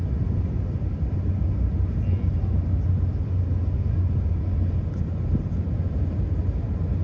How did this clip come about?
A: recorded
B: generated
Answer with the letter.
A